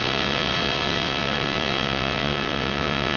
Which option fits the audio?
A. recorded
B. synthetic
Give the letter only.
B